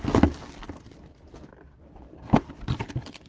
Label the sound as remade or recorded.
recorded